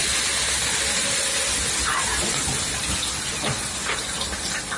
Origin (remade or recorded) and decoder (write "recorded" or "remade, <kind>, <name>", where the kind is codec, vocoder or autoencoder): recorded